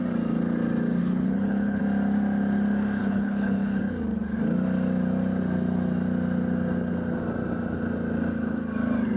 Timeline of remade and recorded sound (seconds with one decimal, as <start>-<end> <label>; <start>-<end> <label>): 0.0-1.0 recorded; 1.0-1.8 remade; 1.8-3.0 recorded; 3.0-3.8 remade; 3.8-9.2 recorded